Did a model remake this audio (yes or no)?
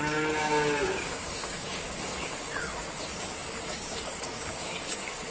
yes